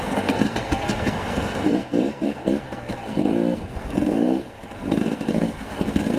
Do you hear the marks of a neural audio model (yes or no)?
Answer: yes